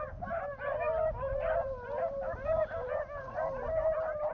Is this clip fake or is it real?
real